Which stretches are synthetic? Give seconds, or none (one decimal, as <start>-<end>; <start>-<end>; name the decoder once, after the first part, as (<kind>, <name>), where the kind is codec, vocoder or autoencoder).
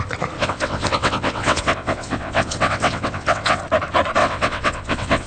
0.4-3.6 (vocoder, WaveNeXt); 4.2-5.3